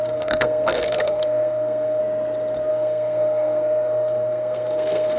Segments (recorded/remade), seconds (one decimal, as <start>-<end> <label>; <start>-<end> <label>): 0.0-2.0 remade; 2.0-2.7 recorded; 2.7-5.2 remade